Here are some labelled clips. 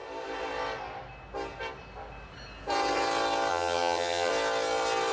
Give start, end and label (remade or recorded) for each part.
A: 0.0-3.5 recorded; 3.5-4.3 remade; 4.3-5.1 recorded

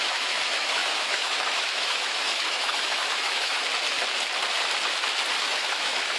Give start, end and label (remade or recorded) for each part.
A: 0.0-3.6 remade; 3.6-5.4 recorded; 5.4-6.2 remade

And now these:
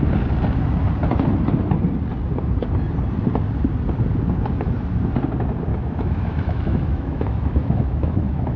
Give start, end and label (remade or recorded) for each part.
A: 0.0-5.7 recorded; 5.7-8.6 remade

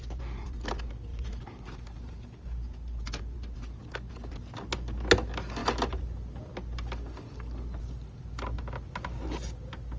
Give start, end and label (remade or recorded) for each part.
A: 0.0-10.0 recorded

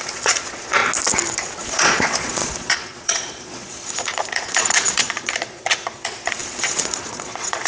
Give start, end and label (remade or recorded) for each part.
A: 0.0-0.8 remade; 0.8-1.6 recorded; 1.6-7.7 remade

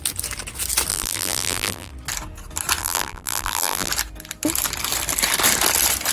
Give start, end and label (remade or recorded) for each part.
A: 0.0-0.9 recorded; 0.9-1.9 remade; 1.9-2.8 recorded; 2.8-3.9 remade; 3.9-6.1 recorded